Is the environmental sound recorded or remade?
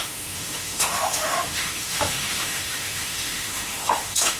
remade